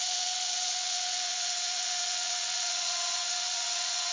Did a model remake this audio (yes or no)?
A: yes